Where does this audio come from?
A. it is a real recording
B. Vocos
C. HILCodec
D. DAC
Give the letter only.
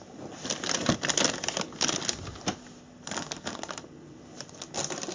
A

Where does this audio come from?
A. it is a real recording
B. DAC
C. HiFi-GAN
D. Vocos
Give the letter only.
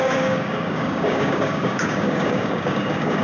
B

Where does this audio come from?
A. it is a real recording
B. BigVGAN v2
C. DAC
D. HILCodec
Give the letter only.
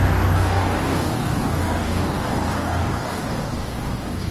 C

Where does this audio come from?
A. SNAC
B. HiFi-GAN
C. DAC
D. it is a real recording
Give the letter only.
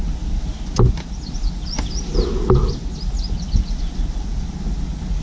D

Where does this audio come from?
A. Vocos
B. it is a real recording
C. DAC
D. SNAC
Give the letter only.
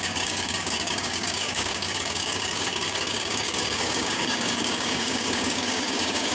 C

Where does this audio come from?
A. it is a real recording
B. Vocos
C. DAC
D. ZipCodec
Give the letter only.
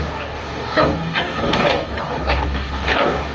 C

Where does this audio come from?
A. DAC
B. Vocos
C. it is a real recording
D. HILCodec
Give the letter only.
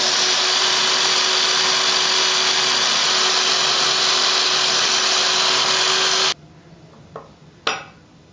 C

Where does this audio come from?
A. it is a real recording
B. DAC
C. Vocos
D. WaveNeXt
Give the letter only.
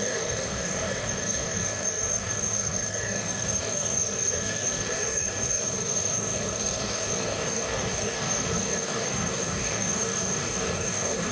B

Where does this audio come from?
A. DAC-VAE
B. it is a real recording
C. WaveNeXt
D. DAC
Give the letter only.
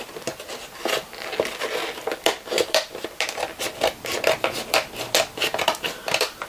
B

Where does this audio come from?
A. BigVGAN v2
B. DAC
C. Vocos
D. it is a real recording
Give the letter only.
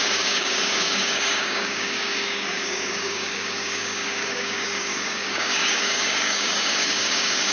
B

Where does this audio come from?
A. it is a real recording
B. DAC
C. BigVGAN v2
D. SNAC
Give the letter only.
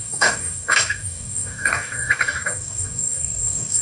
B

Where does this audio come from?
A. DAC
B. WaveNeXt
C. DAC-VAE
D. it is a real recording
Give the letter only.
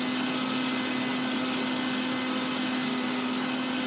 D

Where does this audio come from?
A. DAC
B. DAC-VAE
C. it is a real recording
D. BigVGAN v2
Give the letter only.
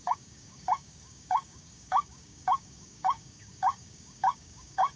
A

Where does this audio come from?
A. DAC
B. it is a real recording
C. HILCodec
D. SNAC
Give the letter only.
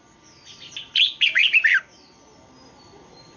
B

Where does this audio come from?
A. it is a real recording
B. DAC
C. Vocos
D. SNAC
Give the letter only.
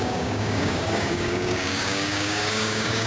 B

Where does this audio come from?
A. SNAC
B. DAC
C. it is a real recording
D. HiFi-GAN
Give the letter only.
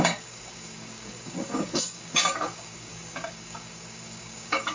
B